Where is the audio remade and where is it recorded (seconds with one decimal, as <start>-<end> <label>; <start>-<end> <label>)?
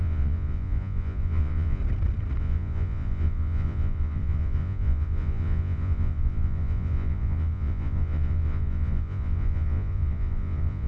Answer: 0.0-1.8 remade; 1.8-2.4 recorded; 2.4-10.9 remade